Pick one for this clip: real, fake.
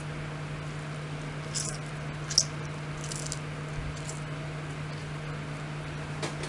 real